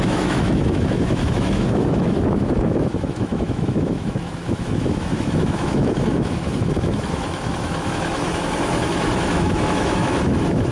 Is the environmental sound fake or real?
fake